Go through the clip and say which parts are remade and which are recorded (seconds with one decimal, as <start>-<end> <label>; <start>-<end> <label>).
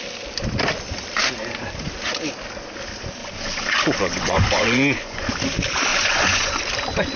0.0-3.2 recorded; 3.2-5.3 remade; 5.3-5.9 recorded; 5.9-6.6 remade; 6.6-7.2 recorded